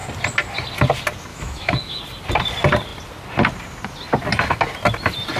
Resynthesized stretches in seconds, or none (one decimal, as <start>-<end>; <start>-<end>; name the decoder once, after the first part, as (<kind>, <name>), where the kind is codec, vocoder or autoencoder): 1.3-2.0 (autoencoder, DAC-VAE)